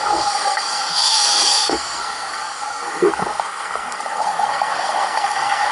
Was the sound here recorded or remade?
remade